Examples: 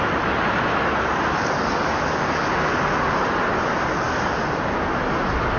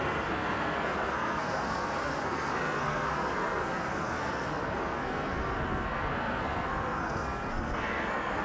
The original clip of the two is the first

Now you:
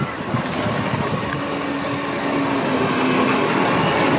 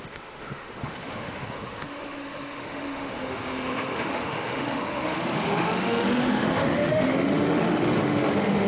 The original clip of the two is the first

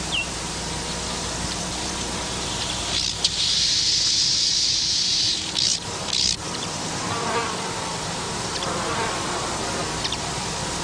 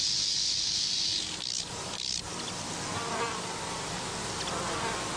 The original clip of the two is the second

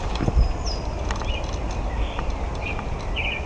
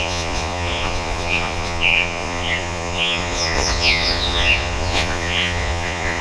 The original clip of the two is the first